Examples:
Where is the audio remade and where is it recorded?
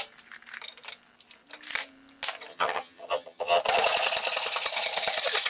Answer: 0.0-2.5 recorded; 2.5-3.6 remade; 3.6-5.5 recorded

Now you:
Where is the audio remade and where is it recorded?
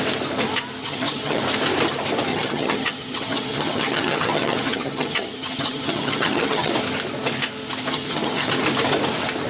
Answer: 0.0-0.8 recorded; 0.8-1.4 remade; 1.4-2.3 recorded; 2.3-6.7 remade; 6.7-7.9 recorded; 7.9-8.5 remade; 8.5-9.5 recorded